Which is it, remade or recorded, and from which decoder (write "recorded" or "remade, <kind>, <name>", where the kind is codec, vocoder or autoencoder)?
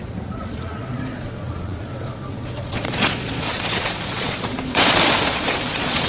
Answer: remade, vocoder, Vocos